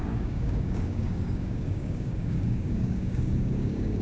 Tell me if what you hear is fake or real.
fake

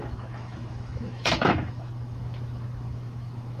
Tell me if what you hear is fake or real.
fake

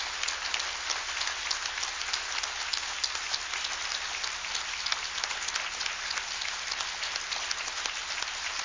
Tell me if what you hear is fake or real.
real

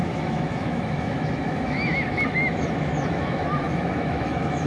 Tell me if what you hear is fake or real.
fake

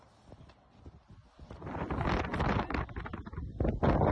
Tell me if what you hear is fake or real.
real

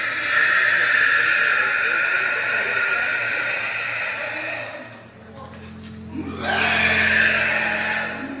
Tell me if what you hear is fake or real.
real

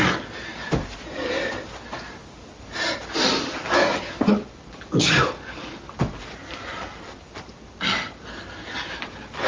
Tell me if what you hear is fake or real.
real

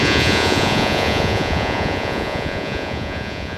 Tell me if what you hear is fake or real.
fake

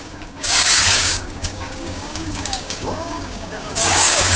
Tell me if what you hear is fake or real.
fake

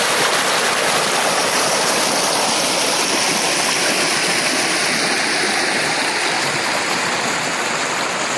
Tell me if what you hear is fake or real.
real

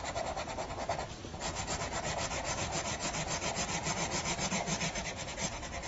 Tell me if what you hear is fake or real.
real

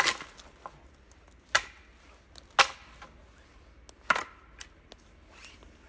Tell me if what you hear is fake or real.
real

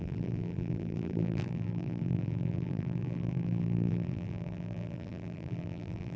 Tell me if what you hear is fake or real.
fake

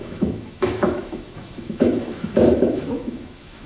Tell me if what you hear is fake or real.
fake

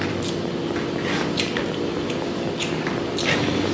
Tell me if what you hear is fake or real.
real